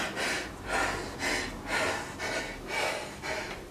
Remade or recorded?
recorded